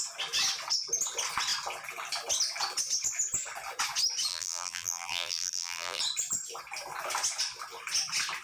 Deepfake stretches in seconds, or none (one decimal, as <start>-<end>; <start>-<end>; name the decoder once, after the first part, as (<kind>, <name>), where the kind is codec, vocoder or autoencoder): 4.3-6.0 (vocoder, BigVGAN v2)